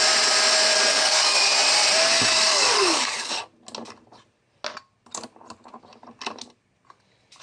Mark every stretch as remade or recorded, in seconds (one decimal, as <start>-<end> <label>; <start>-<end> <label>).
0.0-0.9 recorded; 0.9-1.5 remade; 1.5-2.3 recorded; 2.3-3.4 remade; 3.4-7.4 recorded